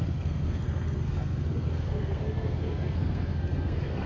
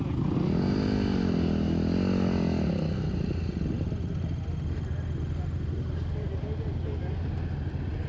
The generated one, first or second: first